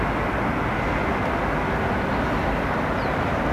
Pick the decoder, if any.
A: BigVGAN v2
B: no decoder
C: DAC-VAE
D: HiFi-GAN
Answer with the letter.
B